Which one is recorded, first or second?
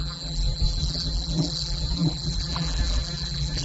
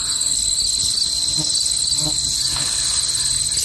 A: second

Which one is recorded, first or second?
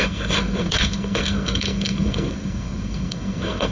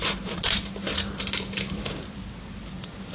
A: second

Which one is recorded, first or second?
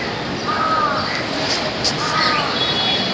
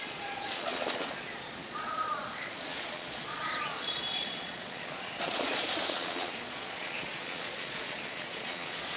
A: first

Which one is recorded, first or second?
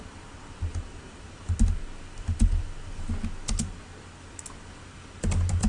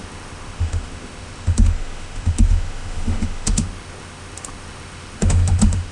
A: first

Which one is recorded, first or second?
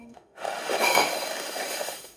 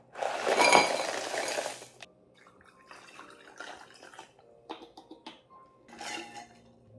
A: second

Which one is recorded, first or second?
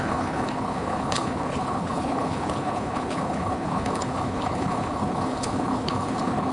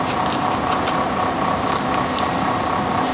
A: second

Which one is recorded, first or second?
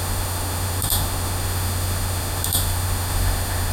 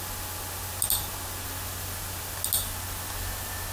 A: second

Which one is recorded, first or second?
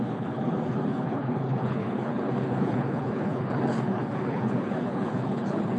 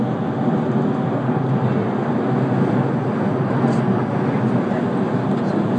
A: second